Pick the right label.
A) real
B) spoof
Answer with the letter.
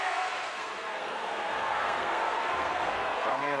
B